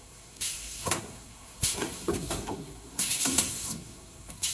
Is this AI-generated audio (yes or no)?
yes